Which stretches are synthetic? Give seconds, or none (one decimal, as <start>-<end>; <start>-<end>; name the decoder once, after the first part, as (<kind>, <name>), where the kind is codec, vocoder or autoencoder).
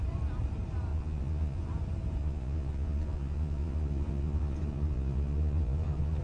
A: 0.9-1.7 (vocoder, Vocos); 2.2-6.2